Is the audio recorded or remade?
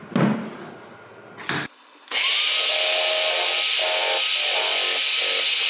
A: recorded